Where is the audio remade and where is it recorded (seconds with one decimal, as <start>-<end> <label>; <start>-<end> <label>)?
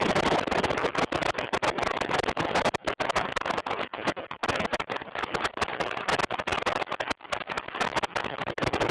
0.0-4.7 recorded; 4.7-5.3 remade; 5.3-8.9 recorded